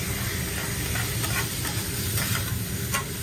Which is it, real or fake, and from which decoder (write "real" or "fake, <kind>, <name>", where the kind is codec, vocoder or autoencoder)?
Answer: real